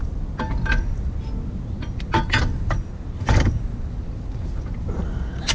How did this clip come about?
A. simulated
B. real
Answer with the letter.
B